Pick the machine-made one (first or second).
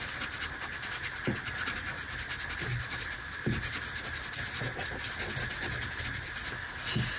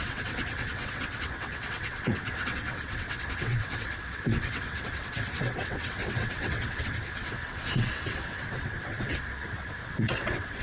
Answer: second